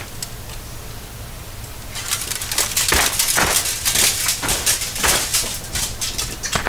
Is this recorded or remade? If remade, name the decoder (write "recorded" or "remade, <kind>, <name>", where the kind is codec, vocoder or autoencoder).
recorded